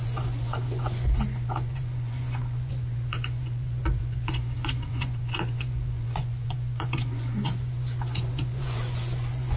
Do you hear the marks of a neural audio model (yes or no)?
yes